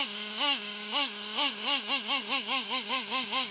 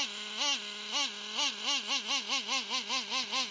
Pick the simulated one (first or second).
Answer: first